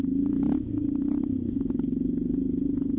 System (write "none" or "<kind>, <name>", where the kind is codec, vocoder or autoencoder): none